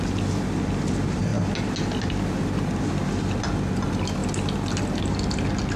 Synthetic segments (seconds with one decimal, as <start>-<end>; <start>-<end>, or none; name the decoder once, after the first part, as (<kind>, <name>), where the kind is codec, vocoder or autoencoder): none